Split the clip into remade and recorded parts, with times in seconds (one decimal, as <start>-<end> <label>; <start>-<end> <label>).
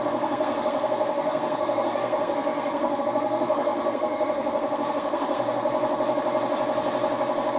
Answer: 0.0-5.7 remade; 5.7-7.6 recorded